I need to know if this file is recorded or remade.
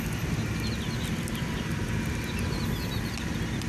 recorded